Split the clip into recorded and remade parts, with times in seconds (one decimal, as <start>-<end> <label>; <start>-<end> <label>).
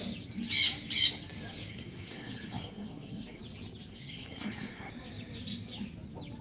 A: 0.0-1.7 recorded; 1.7-3.4 remade; 3.4-3.9 recorded; 3.9-4.9 remade; 4.9-6.4 recorded